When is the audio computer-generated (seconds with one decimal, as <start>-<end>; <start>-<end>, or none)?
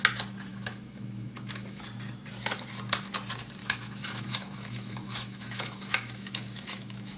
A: 0.5-1.8; 3.6-7.2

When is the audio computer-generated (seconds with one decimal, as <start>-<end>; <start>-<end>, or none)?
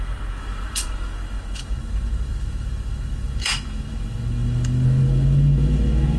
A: 0.0-6.2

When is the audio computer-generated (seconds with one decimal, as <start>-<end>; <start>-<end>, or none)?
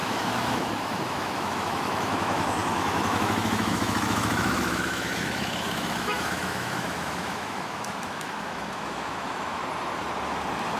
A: 0.0-9.6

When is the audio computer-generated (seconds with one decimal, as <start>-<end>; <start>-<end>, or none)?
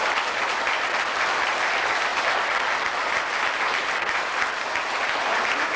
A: none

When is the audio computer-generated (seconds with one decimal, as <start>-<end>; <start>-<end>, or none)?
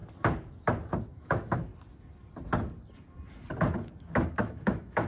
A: 1.1-1.7; 4.3-5.1